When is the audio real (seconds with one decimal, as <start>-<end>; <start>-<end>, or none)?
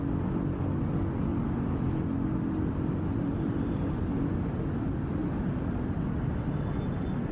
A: 0.0-1.3; 1.9-3.1; 4.1-5.2; 6.0-7.3